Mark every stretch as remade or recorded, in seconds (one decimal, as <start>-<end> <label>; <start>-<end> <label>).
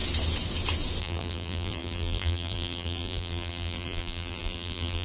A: 0.0-1.0 recorded; 1.0-5.0 remade